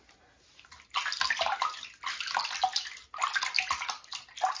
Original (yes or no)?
yes